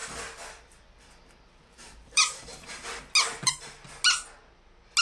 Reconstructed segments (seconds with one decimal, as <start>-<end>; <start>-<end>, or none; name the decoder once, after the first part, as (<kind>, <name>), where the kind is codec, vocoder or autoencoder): 0.0-3.0 (vocoder, BigVGAN v2)